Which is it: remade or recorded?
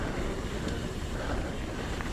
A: recorded